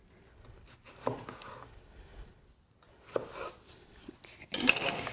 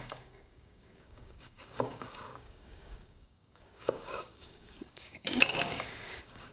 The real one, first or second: first